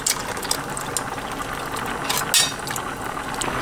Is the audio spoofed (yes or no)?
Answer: no